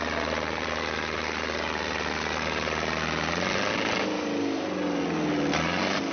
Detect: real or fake real